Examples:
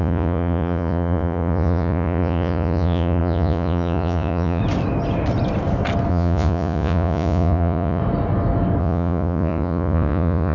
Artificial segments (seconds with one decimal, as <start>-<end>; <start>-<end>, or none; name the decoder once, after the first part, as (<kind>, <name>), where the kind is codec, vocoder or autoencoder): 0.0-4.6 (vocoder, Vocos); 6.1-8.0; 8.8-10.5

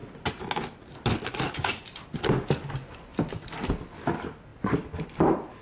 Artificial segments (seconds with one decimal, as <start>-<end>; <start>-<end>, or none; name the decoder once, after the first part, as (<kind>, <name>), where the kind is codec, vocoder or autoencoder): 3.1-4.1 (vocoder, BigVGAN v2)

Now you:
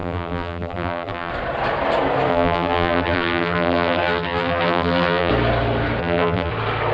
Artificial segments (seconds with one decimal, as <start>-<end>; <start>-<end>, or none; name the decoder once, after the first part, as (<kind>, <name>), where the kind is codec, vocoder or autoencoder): 0.0-1.3 (vocoder, BigVGAN v2); 2.3-5.3; 6.0-6.5

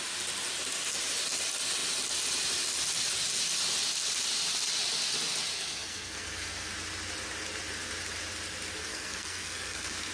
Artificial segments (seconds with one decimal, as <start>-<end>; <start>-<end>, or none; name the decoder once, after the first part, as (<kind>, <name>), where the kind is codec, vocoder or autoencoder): 5.5-6.7 (codec, SNAC); 8.8-10.1

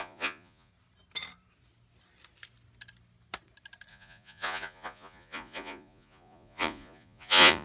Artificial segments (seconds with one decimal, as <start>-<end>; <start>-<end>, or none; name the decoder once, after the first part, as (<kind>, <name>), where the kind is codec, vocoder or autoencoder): 0.0-0.7 (vocoder, Vocos); 3.9-7.6

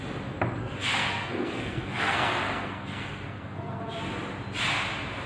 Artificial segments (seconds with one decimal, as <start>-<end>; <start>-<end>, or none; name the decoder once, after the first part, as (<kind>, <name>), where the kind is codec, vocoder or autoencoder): 0.6-3.8 (codec, SNAC)

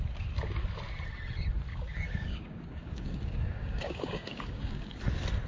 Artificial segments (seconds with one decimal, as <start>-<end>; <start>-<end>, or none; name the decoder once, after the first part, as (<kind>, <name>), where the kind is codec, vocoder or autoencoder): 1.7-5.0 (codec, DAC)

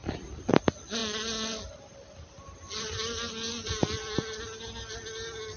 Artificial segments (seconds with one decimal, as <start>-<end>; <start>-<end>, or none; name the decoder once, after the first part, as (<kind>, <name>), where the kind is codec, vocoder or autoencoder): none